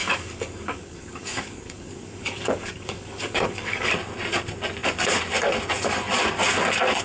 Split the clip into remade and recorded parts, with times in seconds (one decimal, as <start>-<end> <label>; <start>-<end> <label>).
0.0-3.9 remade; 3.9-7.0 recorded